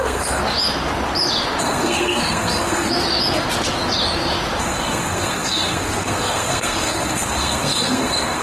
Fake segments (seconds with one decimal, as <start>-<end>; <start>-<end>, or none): 0.0-0.4; 1.6-2.9; 4.6-8.4